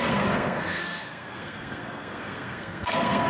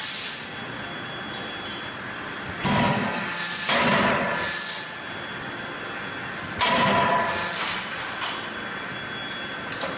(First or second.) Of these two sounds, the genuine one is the second